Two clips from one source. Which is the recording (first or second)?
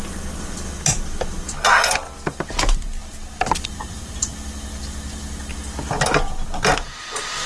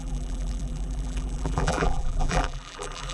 first